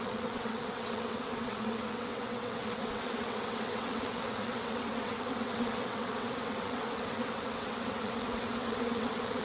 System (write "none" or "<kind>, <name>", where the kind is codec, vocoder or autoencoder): vocoder, WaveNeXt